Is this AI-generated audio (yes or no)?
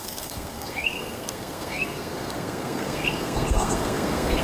yes